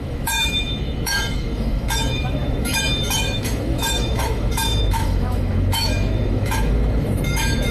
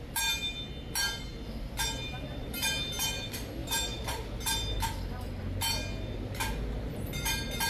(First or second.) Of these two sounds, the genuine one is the second